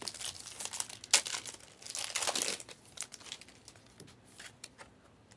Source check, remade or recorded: recorded